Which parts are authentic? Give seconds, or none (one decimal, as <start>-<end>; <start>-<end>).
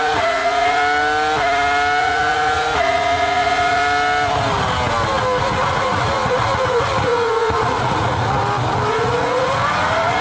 0.8-2.0; 3.8-5.4; 8.4-8.9